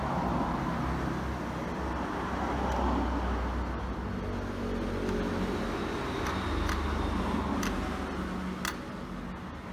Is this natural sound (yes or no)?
yes